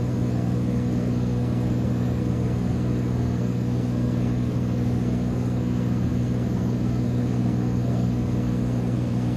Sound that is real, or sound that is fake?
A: fake